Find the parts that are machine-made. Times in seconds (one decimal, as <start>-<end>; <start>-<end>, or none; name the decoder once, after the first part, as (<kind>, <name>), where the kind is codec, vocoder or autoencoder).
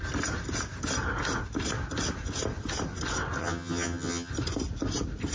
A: 3.4-4.3 (vocoder, HiFi-GAN)